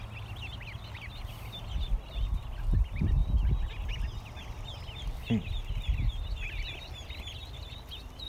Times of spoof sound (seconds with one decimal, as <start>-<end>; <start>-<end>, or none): none